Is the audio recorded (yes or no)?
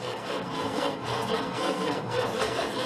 no